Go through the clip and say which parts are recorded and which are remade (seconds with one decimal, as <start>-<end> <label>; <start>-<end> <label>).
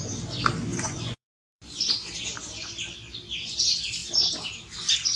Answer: 0.0-0.7 recorded; 0.7-1.6 remade; 1.6-5.2 recorded